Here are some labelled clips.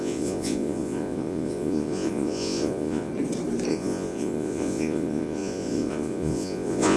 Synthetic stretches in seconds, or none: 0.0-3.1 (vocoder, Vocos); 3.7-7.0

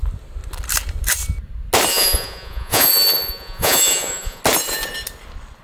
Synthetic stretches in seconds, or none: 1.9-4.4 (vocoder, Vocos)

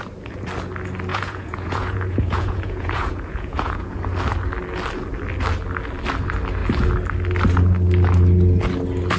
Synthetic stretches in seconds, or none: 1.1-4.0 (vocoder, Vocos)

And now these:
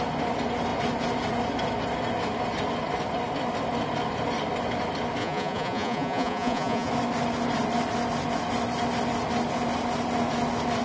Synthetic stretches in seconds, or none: 5.2-6.9 (vocoder, Vocos)

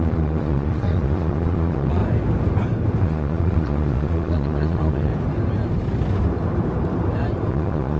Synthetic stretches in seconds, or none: 0.0-2.0 (vocoder, Vocos); 3.0-5.1; 7.5-8.0

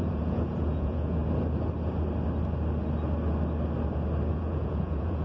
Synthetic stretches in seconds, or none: 0.0-1.2 (vocoder, Vocos); 4.3-5.2